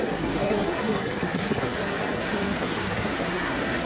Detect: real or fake fake